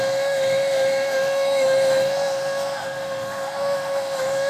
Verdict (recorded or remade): remade